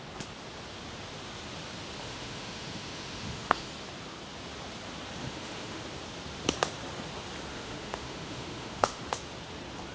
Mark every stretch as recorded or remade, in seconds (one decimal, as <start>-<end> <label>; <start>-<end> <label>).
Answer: 0.0-2.0 recorded; 2.0-3.7 remade; 3.7-5.2 recorded; 5.2-5.8 remade; 5.8-7.5 recorded; 7.5-9.0 remade; 9.0-9.9 recorded